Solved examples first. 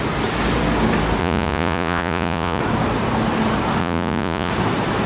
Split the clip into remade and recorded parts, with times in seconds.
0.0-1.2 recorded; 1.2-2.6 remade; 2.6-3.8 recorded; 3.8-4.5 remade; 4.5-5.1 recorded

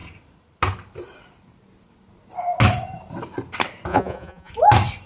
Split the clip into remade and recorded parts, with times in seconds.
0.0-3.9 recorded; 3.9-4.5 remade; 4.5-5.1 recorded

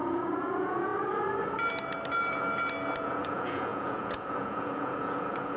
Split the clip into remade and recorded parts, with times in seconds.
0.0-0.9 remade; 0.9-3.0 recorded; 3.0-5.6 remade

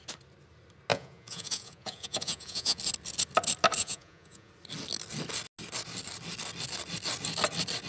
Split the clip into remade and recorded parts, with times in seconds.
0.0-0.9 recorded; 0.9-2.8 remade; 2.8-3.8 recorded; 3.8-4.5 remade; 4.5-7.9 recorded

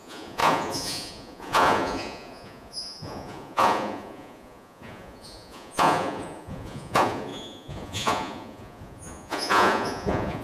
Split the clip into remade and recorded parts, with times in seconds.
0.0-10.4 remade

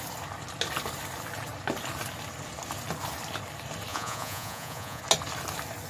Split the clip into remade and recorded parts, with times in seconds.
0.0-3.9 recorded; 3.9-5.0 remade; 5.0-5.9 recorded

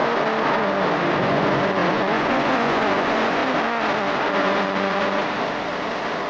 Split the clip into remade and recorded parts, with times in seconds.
0.0-1.2 recorded; 1.2-3.4 remade; 3.4-4.3 recorded; 4.3-5.2 remade; 5.2-6.3 recorded